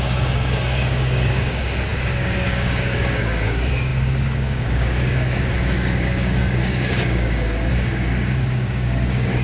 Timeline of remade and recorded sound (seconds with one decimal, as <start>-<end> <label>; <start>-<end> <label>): 0.0-9.4 remade